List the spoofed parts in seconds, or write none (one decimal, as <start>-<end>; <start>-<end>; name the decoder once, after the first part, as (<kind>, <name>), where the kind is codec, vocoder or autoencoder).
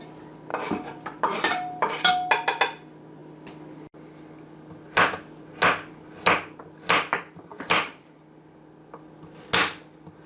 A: 0.5-2.1 (vocoder, BigVGAN v2); 7.5-8.2